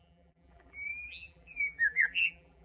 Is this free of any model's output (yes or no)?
no